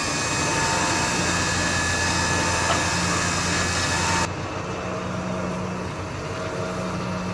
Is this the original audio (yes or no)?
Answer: yes